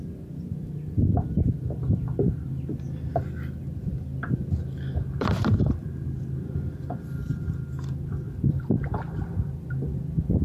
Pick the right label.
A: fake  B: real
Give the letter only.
A